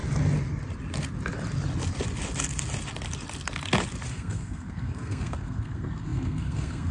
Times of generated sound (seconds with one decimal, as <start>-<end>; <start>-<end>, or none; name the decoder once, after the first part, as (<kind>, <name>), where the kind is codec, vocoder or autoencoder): 4.1-6.9 (codec, SNAC)